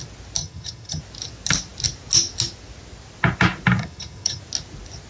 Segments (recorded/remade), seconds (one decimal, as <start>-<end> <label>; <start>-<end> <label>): 0.0-0.4 recorded; 0.4-1.0 remade; 1.0-3.8 recorded; 3.8-4.4 remade; 4.4-5.1 recorded